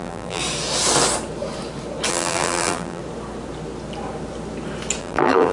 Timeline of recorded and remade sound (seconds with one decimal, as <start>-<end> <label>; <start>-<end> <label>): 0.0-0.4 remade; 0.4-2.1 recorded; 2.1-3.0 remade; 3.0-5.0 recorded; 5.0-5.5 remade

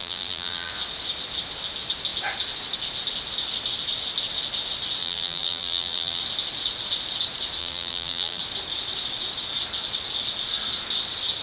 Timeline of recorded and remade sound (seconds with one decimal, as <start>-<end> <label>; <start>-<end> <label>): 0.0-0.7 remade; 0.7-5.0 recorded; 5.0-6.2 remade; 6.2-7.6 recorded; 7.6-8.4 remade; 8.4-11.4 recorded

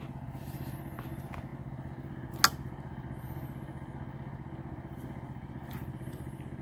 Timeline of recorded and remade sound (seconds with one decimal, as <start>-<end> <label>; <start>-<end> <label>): 0.0-6.6 recorded

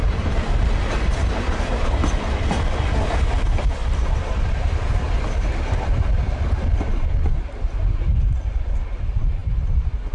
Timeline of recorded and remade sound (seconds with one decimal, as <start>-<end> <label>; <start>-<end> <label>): 0.0-2.0 remade; 2.0-10.1 recorded

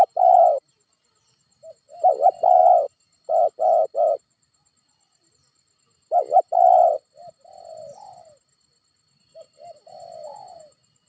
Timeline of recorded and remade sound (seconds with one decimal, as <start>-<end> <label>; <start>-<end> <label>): 0.0-6.8 recorded; 6.8-9.2 remade; 9.2-11.1 recorded

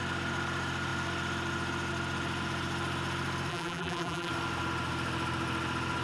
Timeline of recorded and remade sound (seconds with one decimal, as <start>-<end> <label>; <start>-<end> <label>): 0.0-3.5 recorded; 3.5-4.3 remade; 4.3-6.0 recorded

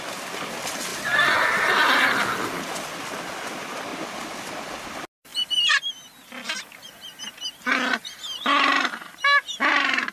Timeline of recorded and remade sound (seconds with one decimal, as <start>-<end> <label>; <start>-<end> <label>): 0.0-10.1 recorded

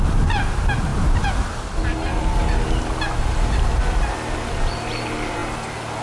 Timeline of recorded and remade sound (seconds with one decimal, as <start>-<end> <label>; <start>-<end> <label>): 0.0-6.0 recorded